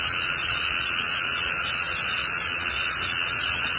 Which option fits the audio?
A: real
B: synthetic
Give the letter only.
B